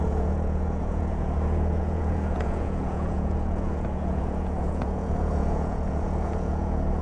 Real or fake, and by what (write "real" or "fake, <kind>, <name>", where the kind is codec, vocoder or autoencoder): fake, vocoder, Vocos